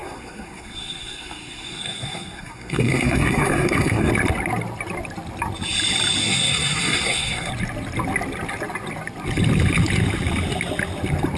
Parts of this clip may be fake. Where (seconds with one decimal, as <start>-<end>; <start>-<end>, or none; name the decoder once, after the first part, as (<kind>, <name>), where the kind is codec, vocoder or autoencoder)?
0.0-4.1 (codec, SNAC); 6.2-7.5